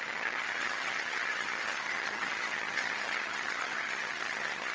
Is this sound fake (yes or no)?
yes